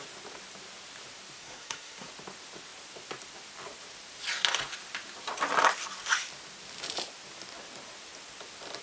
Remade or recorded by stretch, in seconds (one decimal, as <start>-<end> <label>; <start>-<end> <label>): 0.0-1.4 recorded; 1.4-2.1 remade; 2.1-8.8 recorded